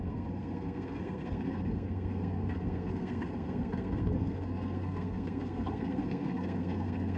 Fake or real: fake